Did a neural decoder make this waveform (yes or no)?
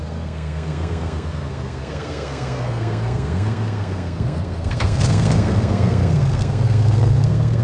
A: yes